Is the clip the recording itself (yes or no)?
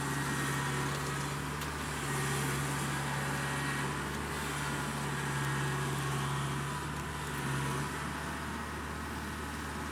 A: yes